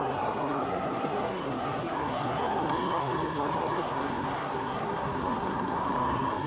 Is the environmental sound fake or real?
fake